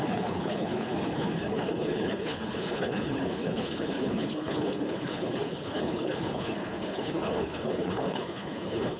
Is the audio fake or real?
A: fake